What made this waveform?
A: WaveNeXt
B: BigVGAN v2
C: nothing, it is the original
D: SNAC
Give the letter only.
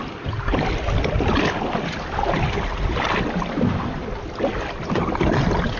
C